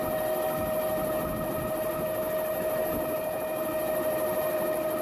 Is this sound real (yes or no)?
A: yes